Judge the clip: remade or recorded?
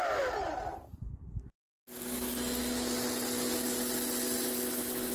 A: recorded